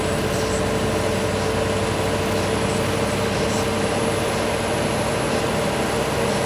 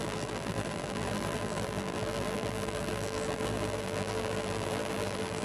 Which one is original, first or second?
first